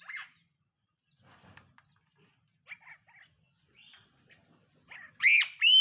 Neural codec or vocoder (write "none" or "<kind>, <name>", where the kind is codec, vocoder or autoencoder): none